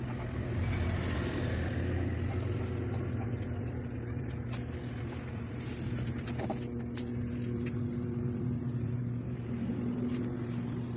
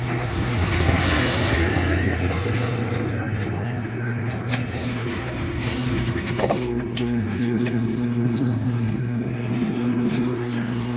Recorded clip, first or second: first